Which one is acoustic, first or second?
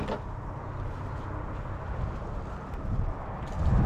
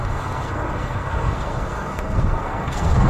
first